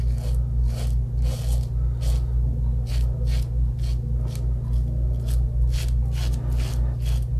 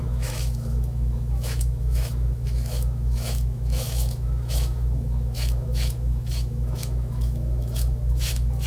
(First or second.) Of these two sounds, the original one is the first